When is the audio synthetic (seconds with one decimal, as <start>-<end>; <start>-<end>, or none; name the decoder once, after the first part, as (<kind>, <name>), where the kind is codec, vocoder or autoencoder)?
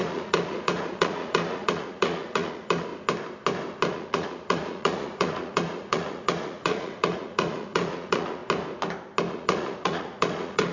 0.0-2.9 (vocoder, Vocos); 3.9-8.4; 9.3-10.7